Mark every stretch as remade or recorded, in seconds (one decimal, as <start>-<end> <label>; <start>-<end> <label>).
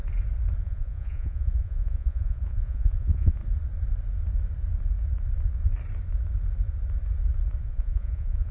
0.0-0.6 recorded; 0.6-3.4 remade; 3.4-7.6 recorded; 7.6-8.5 remade